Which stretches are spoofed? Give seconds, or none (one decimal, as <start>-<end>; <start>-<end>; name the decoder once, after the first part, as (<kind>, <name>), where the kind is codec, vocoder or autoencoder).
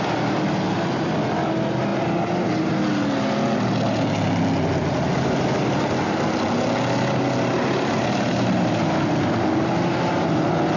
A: none